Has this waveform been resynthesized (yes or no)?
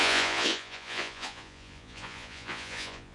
yes